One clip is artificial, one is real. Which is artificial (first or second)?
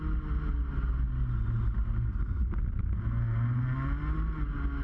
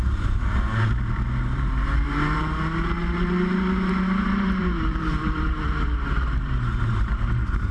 second